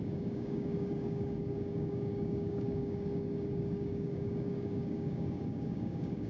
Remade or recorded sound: remade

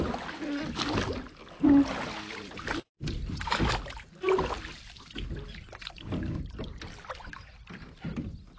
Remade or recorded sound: recorded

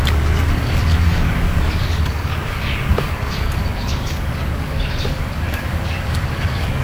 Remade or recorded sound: remade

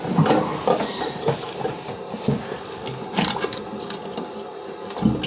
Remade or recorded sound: recorded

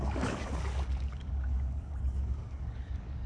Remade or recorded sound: remade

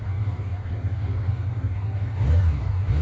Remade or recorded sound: remade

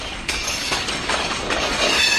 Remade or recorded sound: remade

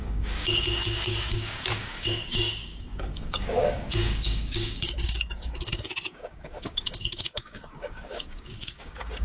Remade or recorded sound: remade